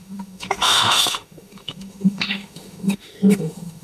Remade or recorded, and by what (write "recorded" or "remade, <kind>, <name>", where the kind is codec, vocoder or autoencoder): remade, autoencoder, DAC-VAE